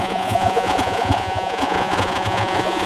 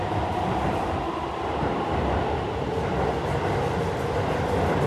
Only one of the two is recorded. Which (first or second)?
second